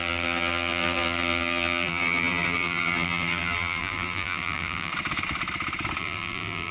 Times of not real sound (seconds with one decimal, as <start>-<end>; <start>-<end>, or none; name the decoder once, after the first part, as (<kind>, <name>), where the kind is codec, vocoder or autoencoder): 0.0-4.9 (vocoder, BigVGAN v2); 6.0-6.7